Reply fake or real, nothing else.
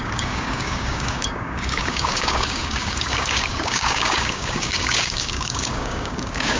fake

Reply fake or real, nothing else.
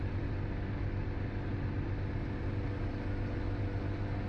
real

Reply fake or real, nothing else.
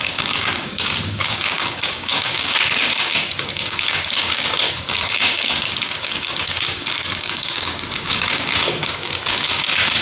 fake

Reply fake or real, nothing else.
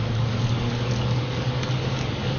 fake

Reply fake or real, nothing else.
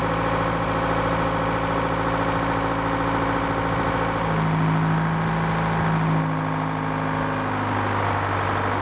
real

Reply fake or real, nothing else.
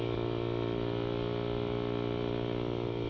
real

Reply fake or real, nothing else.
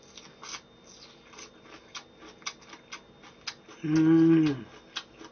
real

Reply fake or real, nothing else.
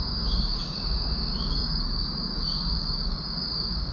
fake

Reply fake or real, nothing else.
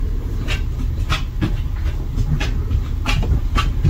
real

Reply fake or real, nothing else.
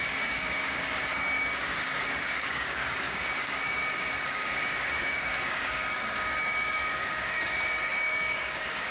fake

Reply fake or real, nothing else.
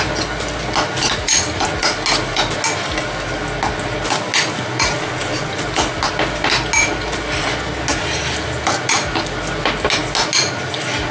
real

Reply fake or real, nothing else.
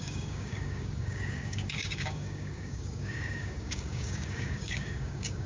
fake